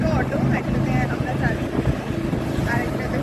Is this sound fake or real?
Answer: real